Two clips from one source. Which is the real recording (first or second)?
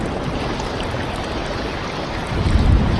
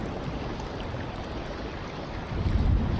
first